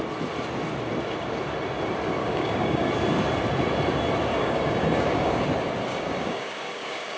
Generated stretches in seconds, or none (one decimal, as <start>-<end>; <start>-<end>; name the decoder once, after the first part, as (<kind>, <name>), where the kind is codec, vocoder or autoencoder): 2.2-2.9 (codec, DAC); 4.3-5.4; 5.9-7.2